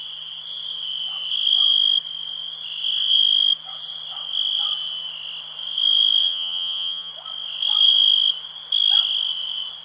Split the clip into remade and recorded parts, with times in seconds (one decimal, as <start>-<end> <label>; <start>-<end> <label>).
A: 0.0-6.2 recorded; 6.2-7.1 remade; 7.1-9.8 recorded